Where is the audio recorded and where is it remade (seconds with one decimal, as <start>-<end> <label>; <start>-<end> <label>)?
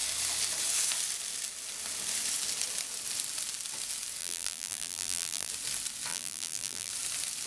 0.0-4.2 recorded; 4.2-5.5 remade; 5.5-6.1 recorded; 6.1-6.9 remade; 6.9-7.5 recorded